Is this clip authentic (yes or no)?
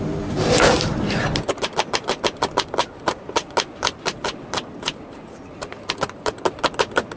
yes